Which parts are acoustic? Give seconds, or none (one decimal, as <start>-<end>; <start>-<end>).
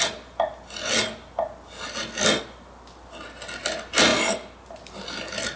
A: 0.0-5.6